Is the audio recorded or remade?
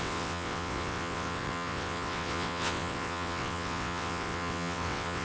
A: remade